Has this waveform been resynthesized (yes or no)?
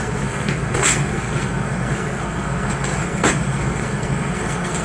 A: yes